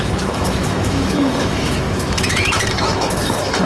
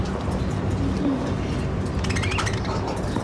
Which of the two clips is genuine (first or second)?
second